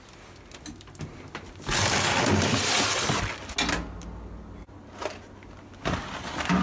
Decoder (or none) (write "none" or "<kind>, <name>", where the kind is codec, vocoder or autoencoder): none